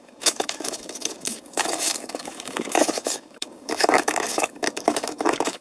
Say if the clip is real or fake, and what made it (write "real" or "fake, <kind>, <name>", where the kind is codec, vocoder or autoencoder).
fake, codec, DAC